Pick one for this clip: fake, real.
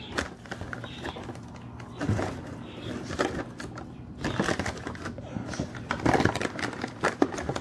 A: real